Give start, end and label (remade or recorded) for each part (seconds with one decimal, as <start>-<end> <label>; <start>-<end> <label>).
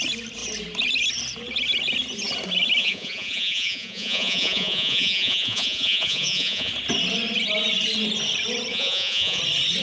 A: 0.0-2.8 recorded; 2.8-6.7 remade; 6.7-8.7 recorded; 8.7-9.4 remade; 9.4-9.8 recorded